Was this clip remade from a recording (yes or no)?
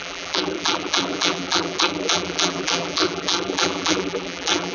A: yes